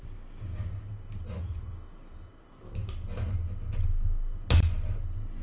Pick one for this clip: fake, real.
real